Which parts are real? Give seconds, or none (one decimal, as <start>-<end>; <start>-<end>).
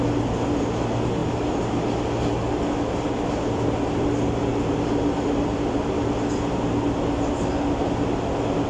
0.0-8.7